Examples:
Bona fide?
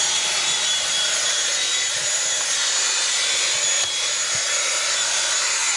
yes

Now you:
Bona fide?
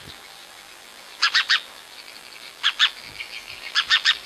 no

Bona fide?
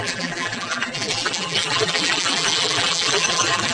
no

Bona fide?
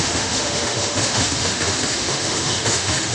no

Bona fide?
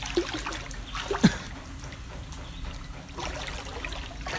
yes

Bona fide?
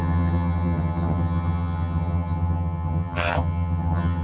no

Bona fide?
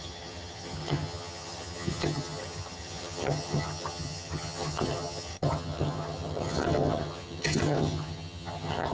no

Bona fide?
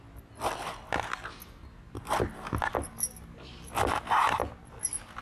yes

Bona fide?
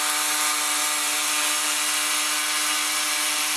yes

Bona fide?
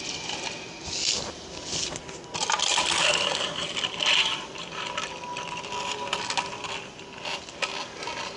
yes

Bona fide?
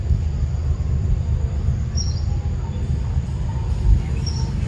yes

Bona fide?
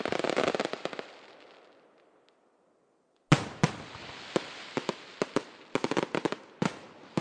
yes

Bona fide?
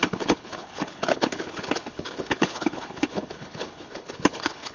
no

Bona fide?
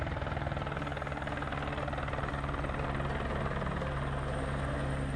yes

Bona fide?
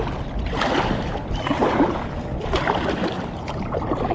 yes